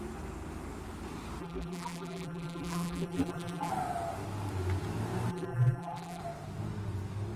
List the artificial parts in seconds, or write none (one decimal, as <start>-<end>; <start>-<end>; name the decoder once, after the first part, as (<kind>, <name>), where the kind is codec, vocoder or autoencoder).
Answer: 1.4-3.7 (vocoder, BigVGAN v2); 5.3-6.2